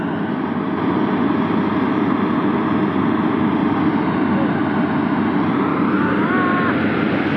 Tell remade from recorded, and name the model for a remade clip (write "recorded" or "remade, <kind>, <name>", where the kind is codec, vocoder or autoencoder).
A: recorded